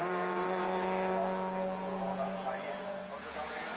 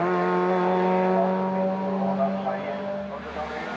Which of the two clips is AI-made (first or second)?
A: first